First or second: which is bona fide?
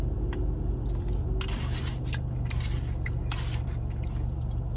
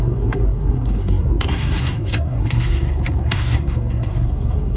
first